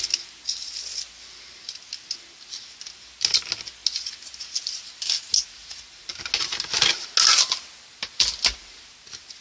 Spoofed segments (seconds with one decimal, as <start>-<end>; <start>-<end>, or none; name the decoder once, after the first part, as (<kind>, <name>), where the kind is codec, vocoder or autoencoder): none

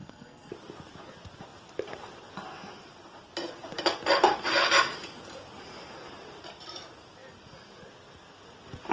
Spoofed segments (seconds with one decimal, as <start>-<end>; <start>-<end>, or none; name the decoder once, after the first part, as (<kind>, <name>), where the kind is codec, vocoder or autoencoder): 0.0-0.5 (codec, SNAC)

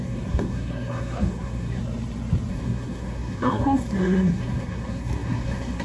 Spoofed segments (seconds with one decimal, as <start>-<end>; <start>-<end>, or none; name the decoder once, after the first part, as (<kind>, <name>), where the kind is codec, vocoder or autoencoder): 0.0-1.8 (codec, SNAC); 2.5-5.8

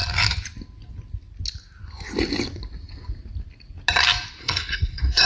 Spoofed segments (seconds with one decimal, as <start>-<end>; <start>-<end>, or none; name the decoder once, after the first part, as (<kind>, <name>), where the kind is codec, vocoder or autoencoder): 4.4-5.3 (codec, SNAC)

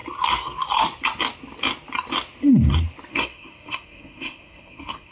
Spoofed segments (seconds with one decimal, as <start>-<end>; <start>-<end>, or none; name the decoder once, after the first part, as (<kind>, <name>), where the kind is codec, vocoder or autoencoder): 3.1-5.1 (codec, SNAC)

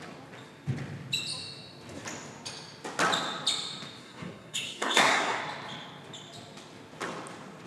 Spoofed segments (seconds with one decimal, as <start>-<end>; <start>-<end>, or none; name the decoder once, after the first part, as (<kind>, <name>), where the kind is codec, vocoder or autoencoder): 4.0-5.4 (codec, SNAC)

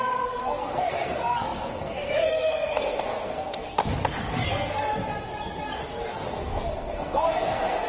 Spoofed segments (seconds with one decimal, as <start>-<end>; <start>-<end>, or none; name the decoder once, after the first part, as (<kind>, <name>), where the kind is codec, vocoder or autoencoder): 0.0-3.8 (codec, SNAC); 4.3-4.9; 5.8-7.9